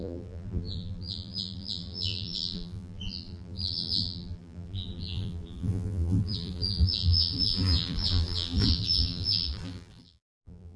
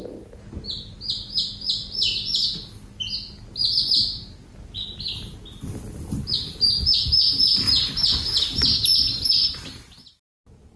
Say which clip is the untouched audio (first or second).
second